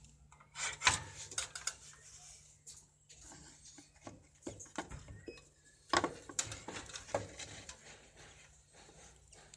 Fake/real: real